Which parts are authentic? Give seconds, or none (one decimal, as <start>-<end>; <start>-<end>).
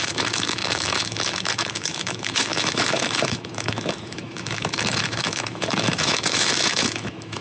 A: none